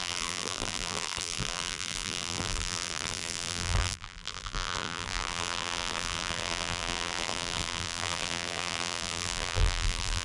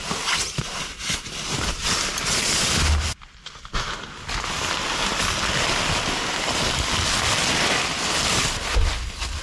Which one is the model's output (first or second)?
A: first